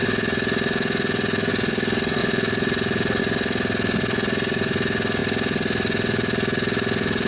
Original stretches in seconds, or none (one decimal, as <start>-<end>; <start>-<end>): 0.0-2.2; 3.2-7.3